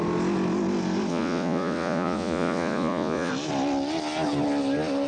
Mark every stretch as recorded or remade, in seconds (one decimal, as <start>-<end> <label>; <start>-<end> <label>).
0.0-1.1 recorded; 1.1-3.3 remade; 3.3-5.1 recorded